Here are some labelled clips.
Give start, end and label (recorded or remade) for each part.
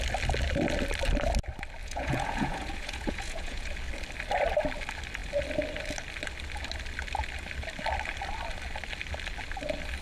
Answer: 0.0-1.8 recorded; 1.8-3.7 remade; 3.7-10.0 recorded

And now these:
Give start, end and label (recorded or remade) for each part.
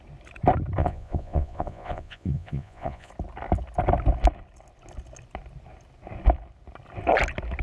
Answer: 0.0-0.8 recorded; 0.8-3.1 remade; 3.1-7.6 recorded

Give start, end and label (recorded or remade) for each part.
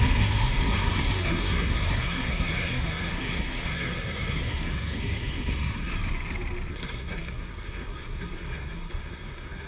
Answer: 0.0-5.9 remade; 5.9-6.7 recorded; 6.7-9.7 remade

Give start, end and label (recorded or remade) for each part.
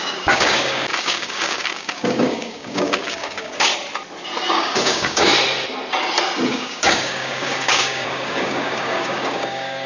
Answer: 0.0-3.7 remade; 3.7-4.5 recorded; 4.5-5.3 remade; 5.3-6.5 recorded; 6.5-9.9 remade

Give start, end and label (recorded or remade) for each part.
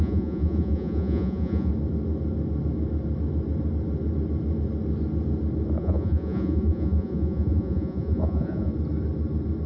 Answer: 0.0-1.7 remade; 1.7-5.8 recorded; 5.8-8.7 remade; 8.7-9.7 recorded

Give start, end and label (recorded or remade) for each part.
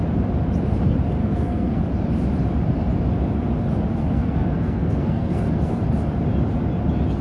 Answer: 0.0-1.2 recorded; 1.2-1.8 remade; 1.8-4.0 recorded; 4.0-5.8 remade; 5.8-7.2 recorded